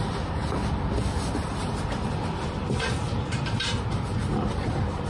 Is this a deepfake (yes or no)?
yes